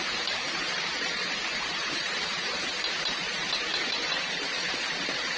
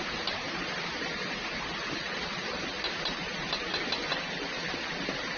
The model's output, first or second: first